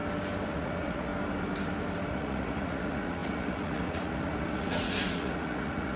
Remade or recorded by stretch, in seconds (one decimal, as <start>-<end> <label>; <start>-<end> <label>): 0.0-0.5 recorded; 0.5-1.1 remade; 1.1-2.1 recorded; 2.1-6.0 remade